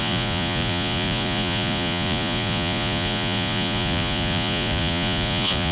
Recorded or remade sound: remade